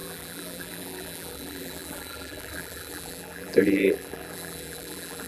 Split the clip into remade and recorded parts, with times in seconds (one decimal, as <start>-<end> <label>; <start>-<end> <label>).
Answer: 0.0-5.3 remade